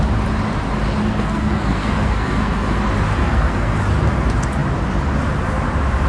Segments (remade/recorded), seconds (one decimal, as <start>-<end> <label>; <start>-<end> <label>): 0.0-1.0 recorded; 1.0-2.8 remade; 2.8-3.2 recorded; 3.2-3.8 remade; 3.8-6.1 recorded